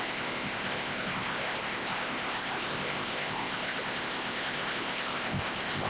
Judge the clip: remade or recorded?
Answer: remade